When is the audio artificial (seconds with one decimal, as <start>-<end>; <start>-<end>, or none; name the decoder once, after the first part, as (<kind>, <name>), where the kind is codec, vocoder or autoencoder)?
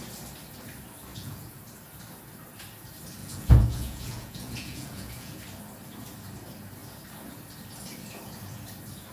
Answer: 1.1-1.6 (vocoder, Vocos); 3.2-5.4